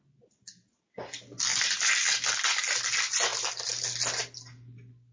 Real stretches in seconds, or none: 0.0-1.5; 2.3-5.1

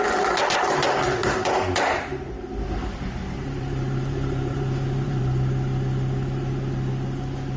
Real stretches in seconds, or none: 0.0-1.2; 5.2-7.6

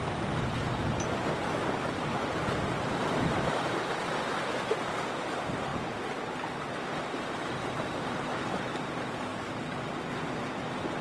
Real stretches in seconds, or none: 0.0-9.3